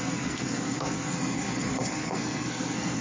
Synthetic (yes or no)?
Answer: yes